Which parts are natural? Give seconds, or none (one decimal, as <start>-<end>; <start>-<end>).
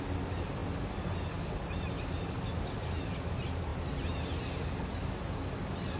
0.0-6.0